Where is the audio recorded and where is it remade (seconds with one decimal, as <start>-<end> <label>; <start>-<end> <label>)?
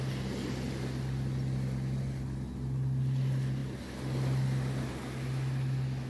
0.0-6.1 recorded